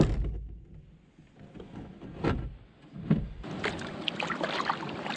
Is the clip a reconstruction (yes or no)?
no